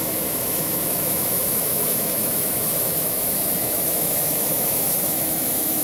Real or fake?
fake